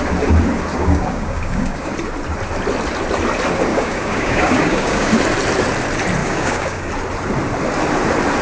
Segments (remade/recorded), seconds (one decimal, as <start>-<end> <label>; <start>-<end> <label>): 0.0-0.7 recorded; 0.7-1.9 remade; 1.9-3.7 recorded; 3.7-5.1 remade; 5.1-6.2 recorded; 6.2-6.9 remade; 6.9-8.4 recorded